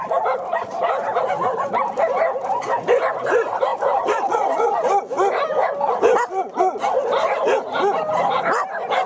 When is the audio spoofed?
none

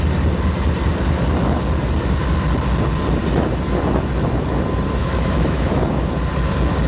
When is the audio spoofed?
5.0-5.8 (autoencoder, DAC-VAE)

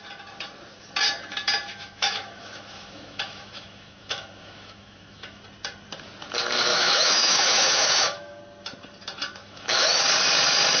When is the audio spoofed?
1.7-5.4 (autoencoder, DAC-VAE); 6.7-8.4; 9.4-10.0

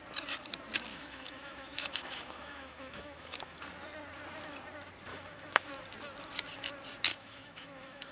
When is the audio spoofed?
0.9-3.6 (autoencoder, DAC-VAE); 5.1-5.7; 7.1-8.1

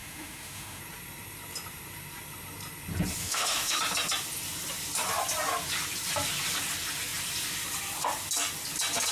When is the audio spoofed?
0.0-0.8 (autoencoder, DAC-VAE); 3.2-3.8

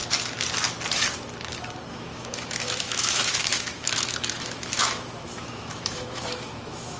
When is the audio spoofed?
1.9-7.0 (autoencoder, DAC-VAE)

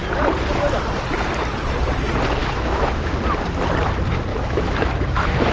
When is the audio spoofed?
2.4-3.1 (autoencoder, DAC-VAE); 4.3-5.5

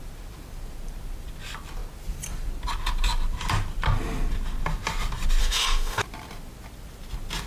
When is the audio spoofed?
5.4-6.0 (autoencoder, DAC-VAE)